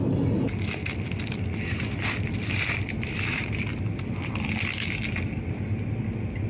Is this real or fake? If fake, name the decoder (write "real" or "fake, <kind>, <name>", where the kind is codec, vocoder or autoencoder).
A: real